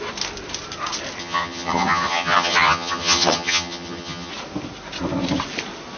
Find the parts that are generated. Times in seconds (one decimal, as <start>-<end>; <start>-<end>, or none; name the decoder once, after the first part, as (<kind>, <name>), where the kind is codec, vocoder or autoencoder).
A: 1.2-4.3 (vocoder, HiFi-GAN)